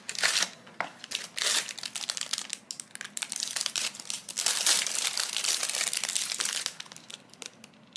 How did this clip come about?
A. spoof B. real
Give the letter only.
B